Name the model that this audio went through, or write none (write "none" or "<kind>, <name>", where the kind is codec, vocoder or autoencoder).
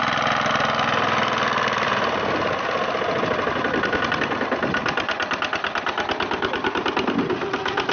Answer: none